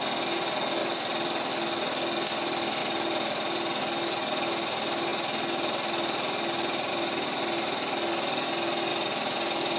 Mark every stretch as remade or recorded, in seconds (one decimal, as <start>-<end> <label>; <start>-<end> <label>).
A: 0.0-0.8 recorded; 0.8-1.5 remade; 1.5-2.8 recorded; 2.8-3.8 remade; 3.8-8.9 recorded; 8.9-9.8 remade